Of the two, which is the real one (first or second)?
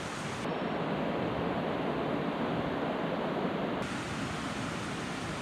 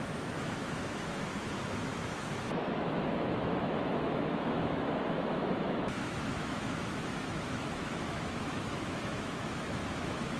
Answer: first